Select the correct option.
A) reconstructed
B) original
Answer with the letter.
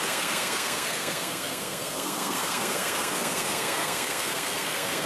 A